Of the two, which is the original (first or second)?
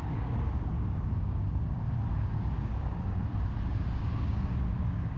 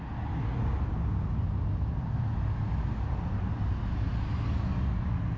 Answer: second